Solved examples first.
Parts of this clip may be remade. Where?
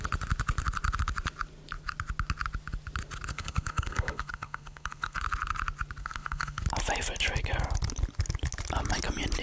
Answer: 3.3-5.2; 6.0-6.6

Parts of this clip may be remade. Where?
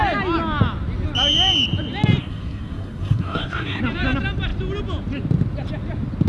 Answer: 2.2-3.8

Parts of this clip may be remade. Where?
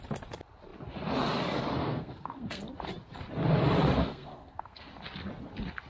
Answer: 1.8-2.6; 4.0-4.9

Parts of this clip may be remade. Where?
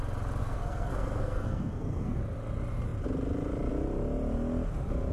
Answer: 0.4-2.2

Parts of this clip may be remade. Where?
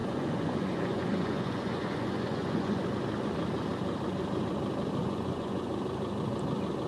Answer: 0.0-2.8; 5.0-5.7